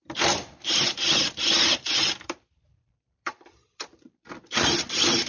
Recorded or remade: remade